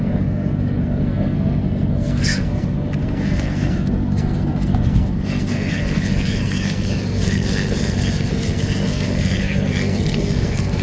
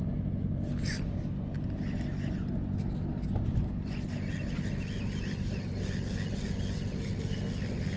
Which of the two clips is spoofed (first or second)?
first